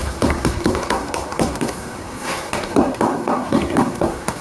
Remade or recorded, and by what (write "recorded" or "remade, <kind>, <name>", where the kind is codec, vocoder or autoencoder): remade, codec, SNAC